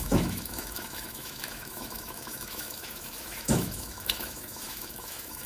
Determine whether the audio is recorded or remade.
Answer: remade